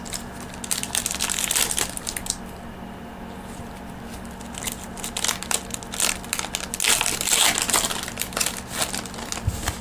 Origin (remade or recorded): recorded